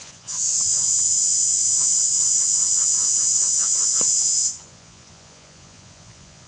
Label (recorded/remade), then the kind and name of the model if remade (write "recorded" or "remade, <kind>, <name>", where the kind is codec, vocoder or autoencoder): remade, vocoder, Vocos